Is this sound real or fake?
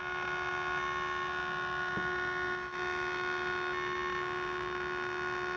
real